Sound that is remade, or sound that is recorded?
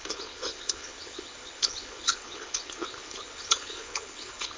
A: remade